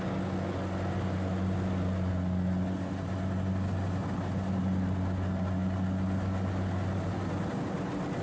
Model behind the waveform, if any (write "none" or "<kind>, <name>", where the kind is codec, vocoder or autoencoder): none